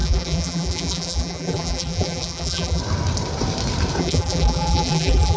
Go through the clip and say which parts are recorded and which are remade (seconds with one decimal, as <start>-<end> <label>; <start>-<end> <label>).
0.0-2.8 remade; 2.8-4.0 recorded; 4.0-5.4 remade